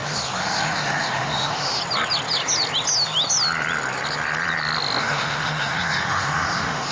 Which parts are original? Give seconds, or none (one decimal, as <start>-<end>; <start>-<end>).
1.8-5.0